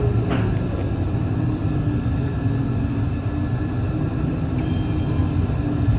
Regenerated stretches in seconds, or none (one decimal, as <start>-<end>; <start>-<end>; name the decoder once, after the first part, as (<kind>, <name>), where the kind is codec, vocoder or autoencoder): none